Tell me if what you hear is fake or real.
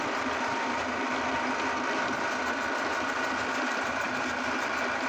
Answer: fake